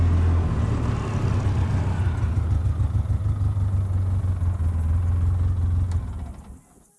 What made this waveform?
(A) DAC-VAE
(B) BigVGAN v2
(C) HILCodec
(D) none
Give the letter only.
D